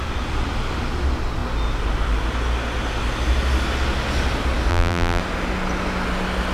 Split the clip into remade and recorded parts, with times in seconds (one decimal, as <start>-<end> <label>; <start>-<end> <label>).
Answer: 0.0-4.7 recorded; 4.7-5.2 remade; 5.2-6.5 recorded